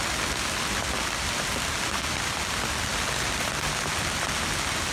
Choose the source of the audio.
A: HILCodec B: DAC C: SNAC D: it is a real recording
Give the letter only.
D